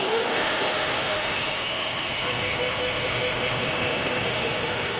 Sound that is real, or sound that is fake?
fake